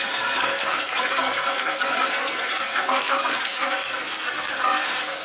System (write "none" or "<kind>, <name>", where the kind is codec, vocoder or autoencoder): codec, SNAC